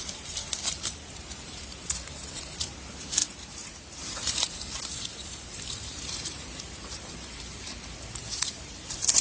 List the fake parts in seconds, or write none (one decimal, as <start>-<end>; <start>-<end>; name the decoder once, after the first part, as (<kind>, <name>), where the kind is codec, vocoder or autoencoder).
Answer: 0.0-9.2 (vocoder, BigVGAN v2)